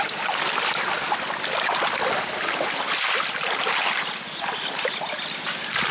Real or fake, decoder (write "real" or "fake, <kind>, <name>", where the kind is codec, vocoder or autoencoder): real